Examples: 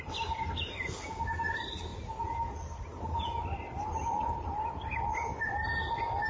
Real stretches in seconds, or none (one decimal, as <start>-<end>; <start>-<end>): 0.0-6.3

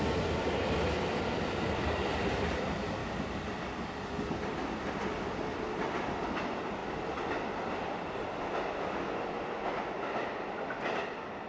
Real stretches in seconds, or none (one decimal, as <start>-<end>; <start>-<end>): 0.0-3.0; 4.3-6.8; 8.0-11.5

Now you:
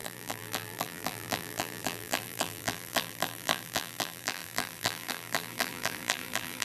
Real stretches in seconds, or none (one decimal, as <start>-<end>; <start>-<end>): none

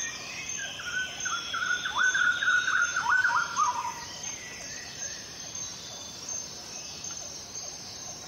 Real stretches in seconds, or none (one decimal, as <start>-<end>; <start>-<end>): 0.0-1.1

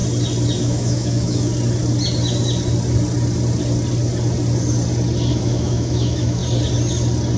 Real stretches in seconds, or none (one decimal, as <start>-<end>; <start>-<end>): 0.0-0.6; 1.5-5.3; 6.4-7.4